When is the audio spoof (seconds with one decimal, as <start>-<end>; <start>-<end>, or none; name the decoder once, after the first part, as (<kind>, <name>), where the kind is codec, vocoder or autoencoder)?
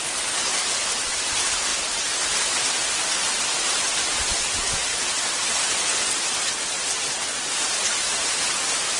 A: none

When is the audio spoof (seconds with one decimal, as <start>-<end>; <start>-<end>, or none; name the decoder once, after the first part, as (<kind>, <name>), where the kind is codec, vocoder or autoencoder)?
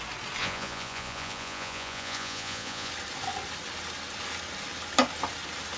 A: 0.4-2.9 (vocoder, Vocos)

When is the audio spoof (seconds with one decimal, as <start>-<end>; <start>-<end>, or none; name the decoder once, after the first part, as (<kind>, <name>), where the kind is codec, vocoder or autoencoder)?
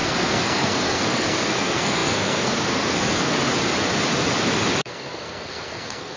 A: 0.0-3.5 (codec, SNAC); 4.8-6.2